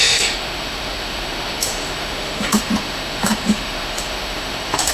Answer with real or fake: fake